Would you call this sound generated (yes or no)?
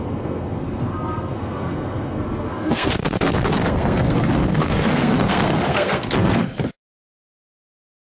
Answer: yes